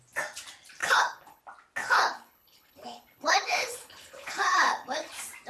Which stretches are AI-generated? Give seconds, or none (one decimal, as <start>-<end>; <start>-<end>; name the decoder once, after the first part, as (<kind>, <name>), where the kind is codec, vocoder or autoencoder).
0.8-1.4 (codec, HILCodec); 1.8-5.1